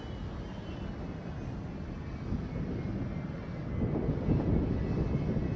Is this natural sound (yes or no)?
yes